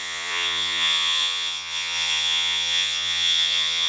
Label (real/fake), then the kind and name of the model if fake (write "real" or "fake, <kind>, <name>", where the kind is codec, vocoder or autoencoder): fake, vocoder, Vocos